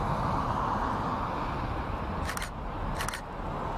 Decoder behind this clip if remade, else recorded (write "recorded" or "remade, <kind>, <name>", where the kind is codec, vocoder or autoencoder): recorded